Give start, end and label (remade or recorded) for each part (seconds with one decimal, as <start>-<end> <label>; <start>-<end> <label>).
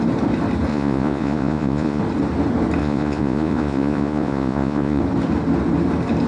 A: 0.0-0.7 recorded; 0.7-2.0 remade; 2.0-2.8 recorded; 2.8-5.0 remade; 5.0-6.3 recorded